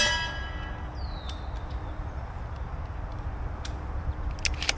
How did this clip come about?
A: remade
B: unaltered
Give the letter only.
B